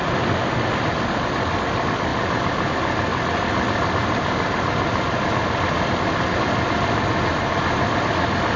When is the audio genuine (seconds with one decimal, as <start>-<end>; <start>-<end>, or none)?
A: 0.0-8.6